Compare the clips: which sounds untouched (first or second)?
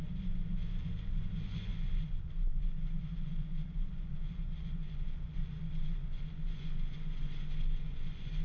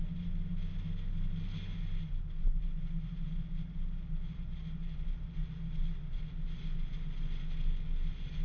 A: second